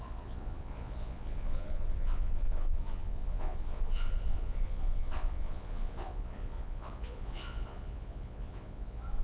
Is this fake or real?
fake